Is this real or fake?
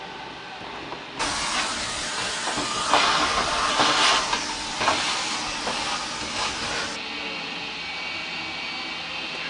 real